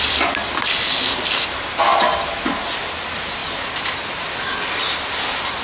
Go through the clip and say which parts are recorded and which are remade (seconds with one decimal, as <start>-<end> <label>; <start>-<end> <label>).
0.0-5.6 recorded